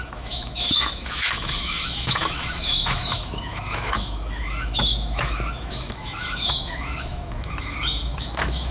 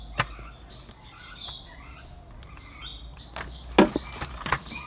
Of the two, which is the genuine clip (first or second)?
second